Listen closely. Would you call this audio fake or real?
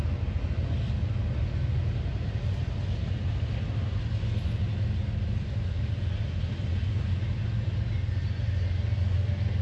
real